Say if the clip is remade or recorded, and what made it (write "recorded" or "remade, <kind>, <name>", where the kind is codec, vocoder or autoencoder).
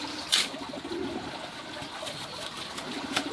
recorded